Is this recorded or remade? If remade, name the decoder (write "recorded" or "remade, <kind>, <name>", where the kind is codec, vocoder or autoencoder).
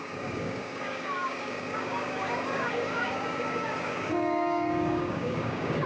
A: remade, codec, DAC